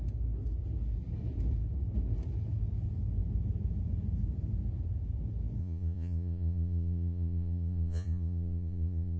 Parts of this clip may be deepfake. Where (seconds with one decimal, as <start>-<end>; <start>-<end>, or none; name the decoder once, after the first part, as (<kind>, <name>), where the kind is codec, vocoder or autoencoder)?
5.6-9.2 (vocoder, Vocos)